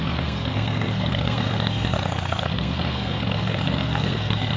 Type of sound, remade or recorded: remade